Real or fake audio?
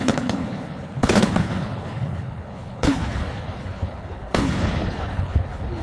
fake